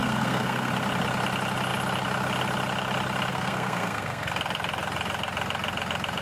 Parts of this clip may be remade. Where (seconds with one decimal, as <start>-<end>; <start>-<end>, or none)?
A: 0.0-0.7; 3.3-4.3